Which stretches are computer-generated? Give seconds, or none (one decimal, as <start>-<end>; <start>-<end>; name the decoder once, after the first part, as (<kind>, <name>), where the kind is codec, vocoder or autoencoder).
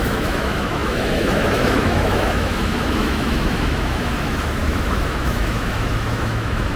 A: 0.0-6.8 (autoencoder, DAC-VAE)